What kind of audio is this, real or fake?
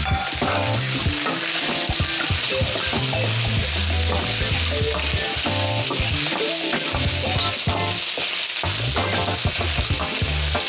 real